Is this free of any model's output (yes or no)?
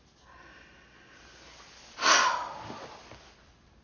yes